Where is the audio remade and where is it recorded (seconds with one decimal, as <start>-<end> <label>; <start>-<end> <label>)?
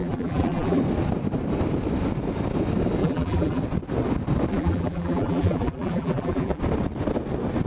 0.0-0.8 remade; 0.8-3.0 recorded; 3.0-3.6 remade; 3.6-4.5 recorded; 4.5-6.6 remade; 6.6-7.7 recorded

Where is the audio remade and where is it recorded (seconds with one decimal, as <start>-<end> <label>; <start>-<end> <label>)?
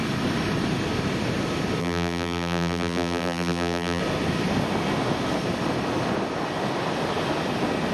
0.0-1.8 recorded; 1.8-4.0 remade; 4.0-7.9 recorded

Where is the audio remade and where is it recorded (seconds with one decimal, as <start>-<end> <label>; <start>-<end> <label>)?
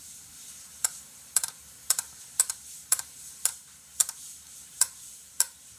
0.0-5.8 remade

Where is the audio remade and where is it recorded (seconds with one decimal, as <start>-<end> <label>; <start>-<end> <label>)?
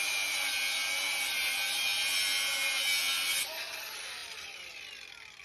0.0-5.4 recorded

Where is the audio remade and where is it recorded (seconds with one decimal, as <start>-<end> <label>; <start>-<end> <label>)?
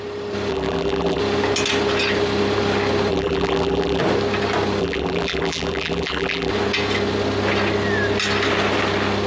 0.0-0.5 recorded; 0.5-1.2 remade; 1.2-3.1 recorded; 3.1-4.0 remade; 4.0-4.8 recorded; 4.8-6.5 remade; 6.5-9.3 recorded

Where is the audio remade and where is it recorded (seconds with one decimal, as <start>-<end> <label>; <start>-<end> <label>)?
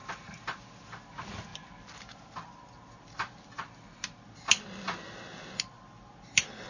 0.0-6.7 recorded